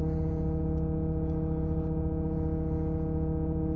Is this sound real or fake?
real